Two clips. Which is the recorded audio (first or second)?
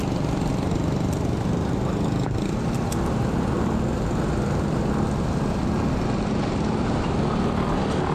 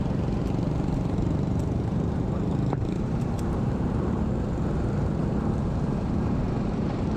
first